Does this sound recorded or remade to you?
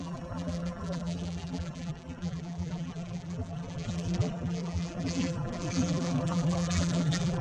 remade